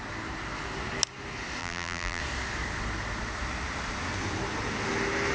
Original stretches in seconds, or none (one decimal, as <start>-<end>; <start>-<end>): 0.0-1.6; 2.2-5.3